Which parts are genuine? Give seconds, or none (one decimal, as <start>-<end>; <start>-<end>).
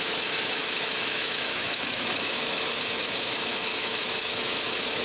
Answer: none